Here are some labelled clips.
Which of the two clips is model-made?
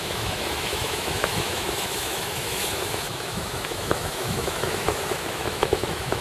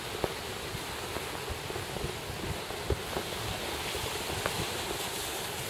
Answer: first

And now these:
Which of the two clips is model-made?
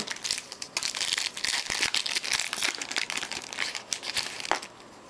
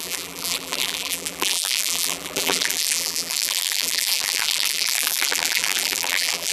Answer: second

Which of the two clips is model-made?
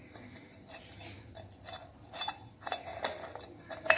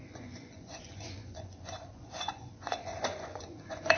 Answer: second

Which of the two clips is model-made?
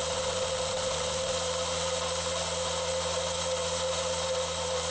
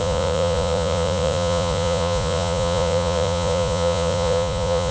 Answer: second